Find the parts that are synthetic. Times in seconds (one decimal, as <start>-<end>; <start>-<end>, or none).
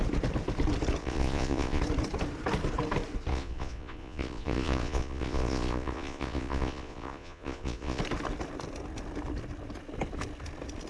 1.0-1.8; 3.3-8.0